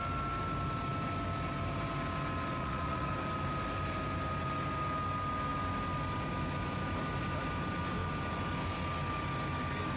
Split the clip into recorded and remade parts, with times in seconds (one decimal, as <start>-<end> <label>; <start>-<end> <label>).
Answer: 0.0-2.6 recorded; 2.6-3.1 remade; 3.1-10.0 recorded